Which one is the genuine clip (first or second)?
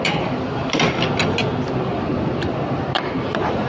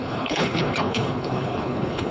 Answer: first